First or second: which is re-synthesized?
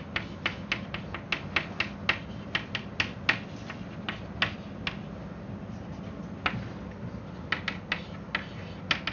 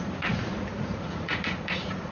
second